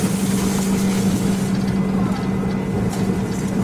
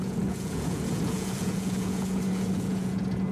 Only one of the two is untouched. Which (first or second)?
first